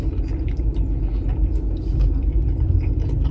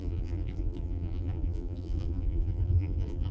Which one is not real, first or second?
second